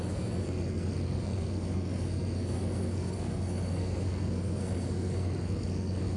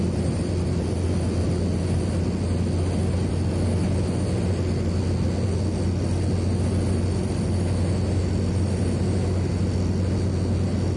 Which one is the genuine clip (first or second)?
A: second